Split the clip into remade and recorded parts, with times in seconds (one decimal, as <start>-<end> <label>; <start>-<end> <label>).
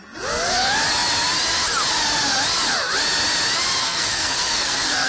0.0-3.8 recorded; 3.8-5.1 remade